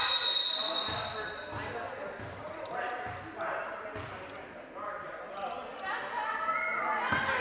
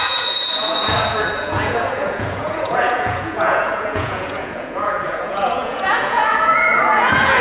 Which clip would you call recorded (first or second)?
first